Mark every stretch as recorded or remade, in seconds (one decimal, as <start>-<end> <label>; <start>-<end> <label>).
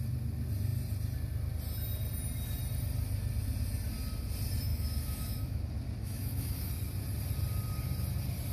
0.0-4.7 recorded; 4.7-5.6 remade; 5.6-6.0 recorded; 6.0-6.7 remade; 6.7-8.5 recorded